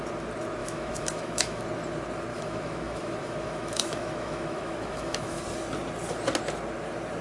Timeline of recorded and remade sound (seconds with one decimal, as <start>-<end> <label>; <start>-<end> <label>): 0.0-0.6 recorded; 0.6-1.6 remade; 1.6-2.3 recorded; 2.3-5.4 remade; 5.4-7.2 recorded